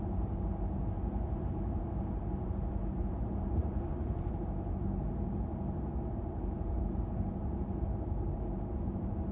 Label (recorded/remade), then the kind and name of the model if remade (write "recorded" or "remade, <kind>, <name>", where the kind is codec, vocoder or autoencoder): remade, vocoder, BigVGAN v2